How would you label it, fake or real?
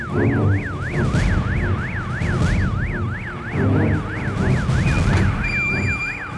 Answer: real